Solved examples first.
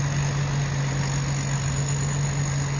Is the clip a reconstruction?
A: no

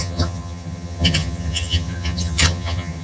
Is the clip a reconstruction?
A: yes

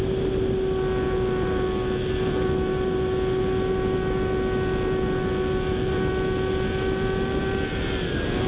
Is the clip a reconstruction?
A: no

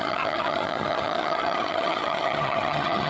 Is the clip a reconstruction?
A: yes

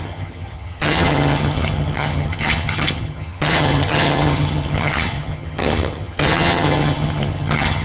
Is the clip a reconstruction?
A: yes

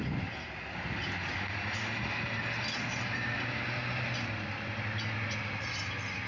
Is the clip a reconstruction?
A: no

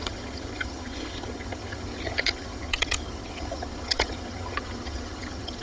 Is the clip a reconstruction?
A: yes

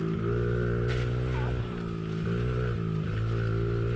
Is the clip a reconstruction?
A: no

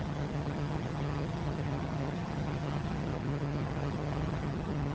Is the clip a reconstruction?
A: yes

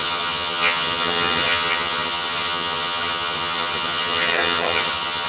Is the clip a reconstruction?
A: yes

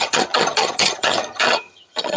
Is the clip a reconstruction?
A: yes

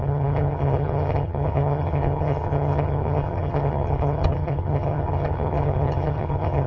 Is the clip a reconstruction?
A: yes